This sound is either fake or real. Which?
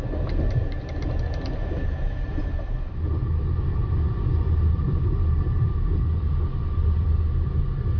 real